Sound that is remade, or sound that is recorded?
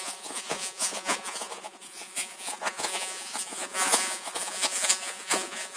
remade